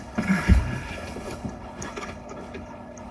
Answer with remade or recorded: remade